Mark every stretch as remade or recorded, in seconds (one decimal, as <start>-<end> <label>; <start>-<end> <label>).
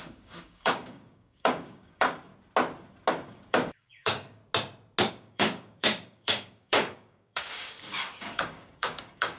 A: 0.0-2.3 remade; 2.3-3.1 recorded; 3.1-4.4 remade; 4.4-5.1 recorded; 5.1-9.4 remade